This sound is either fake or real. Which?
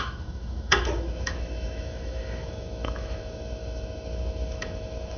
fake